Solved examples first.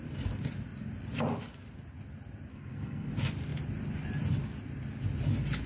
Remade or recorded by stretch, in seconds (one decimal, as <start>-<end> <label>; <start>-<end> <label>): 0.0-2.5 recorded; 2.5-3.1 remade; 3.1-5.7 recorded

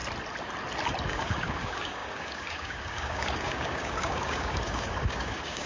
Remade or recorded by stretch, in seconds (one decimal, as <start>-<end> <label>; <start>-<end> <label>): 0.0-1.1 recorded; 1.1-5.7 remade

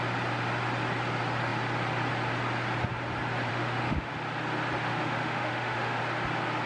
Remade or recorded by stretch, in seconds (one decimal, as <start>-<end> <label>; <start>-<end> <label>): 0.0-3.5 recorded; 3.5-4.1 remade; 4.1-4.9 recorded; 4.9-6.0 remade; 6.0-6.7 recorded

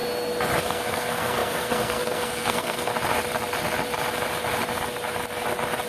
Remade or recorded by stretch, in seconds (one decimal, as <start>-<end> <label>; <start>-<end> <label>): 0.0-0.6 recorded; 0.6-2.9 remade; 2.9-5.9 recorded

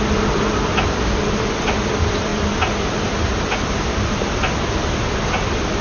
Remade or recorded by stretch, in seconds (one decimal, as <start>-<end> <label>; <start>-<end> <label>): 0.0-5.8 recorded